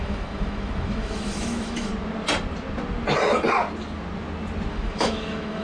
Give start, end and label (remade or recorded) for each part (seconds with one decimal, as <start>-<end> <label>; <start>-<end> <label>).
0.0-1.9 remade; 1.9-4.7 recorded; 4.7-5.6 remade